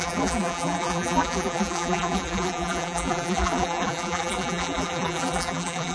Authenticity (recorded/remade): remade